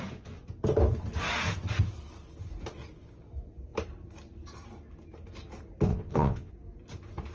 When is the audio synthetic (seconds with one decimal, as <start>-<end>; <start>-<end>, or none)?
5.9-6.5